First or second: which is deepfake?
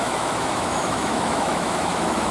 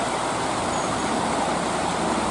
first